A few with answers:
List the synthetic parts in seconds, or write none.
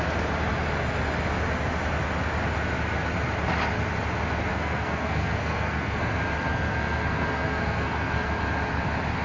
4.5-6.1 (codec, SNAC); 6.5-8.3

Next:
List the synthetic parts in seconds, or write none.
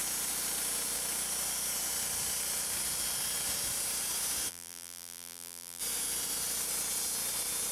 4.5-5.8 (vocoder, BigVGAN v2)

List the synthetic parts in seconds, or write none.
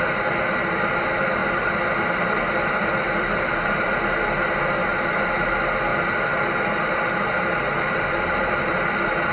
1.4-3.8 (vocoder, BigVGAN v2); 5.9-8.8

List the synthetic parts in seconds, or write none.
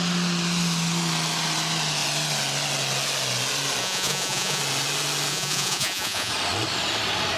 3.8-4.6 (vocoder, Vocos); 5.3-6.3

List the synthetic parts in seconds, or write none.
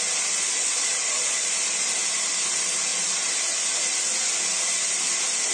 1.0-1.5 (vocoder, Vocos)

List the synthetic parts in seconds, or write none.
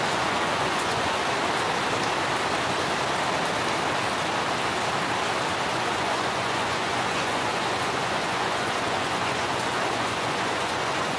0.0-1.2 (vocoder, Vocos); 5.7-11.2